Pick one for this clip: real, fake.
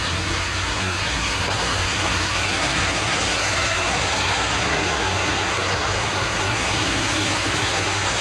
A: fake